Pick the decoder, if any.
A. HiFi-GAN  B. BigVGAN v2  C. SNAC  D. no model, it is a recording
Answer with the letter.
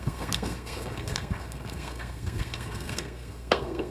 C